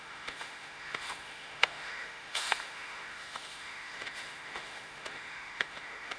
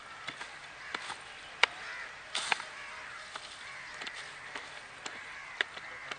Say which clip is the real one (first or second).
second